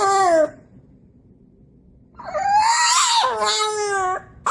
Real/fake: real